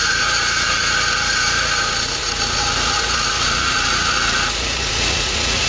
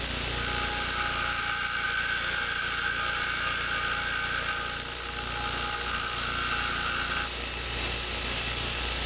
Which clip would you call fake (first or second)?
first